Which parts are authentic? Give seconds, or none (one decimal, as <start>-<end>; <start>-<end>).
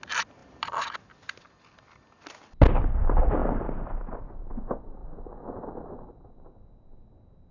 0.0-0.4; 1.9-3.4; 4.0-7.5